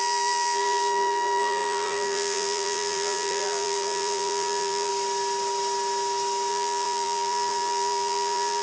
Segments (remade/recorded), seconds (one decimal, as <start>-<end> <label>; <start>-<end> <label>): 0.0-4.9 remade; 4.9-6.5 recorded; 6.5-8.6 remade